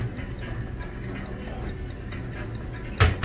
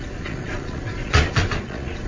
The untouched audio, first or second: first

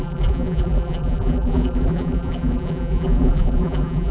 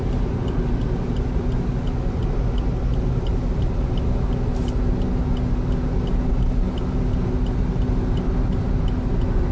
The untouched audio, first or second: second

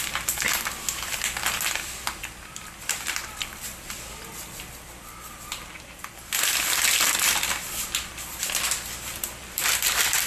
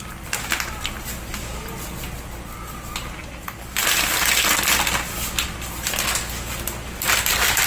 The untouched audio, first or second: second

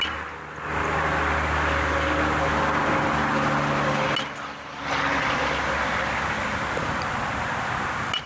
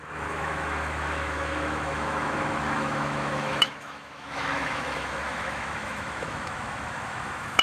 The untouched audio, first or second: first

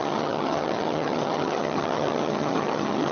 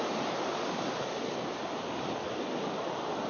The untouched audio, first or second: second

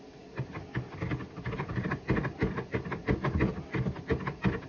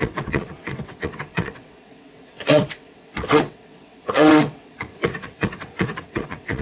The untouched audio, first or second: first